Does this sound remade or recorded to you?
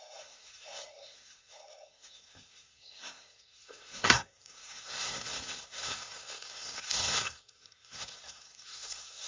remade